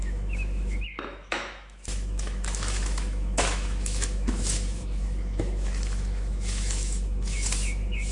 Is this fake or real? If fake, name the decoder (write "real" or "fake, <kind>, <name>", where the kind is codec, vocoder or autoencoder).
fake, autoencoder, DAC-VAE